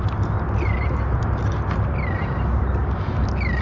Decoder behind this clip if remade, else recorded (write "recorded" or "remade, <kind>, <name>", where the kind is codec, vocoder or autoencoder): recorded